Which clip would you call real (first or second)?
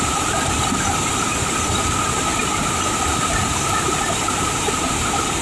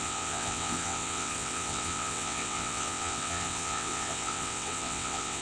first